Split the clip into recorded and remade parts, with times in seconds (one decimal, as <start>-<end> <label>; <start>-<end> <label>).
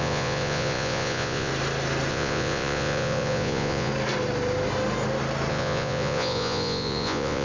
0.0-1.5 remade; 1.5-2.1 recorded; 2.1-3.9 remade; 3.9-5.5 recorded; 5.5-7.4 remade